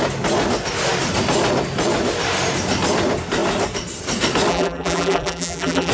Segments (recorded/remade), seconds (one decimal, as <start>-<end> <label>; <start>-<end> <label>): 0.0-4.5 recorded; 4.5-5.9 remade